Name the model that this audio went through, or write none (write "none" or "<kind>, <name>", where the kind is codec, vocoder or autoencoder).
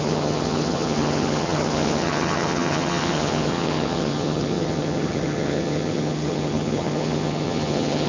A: vocoder, HiFi-GAN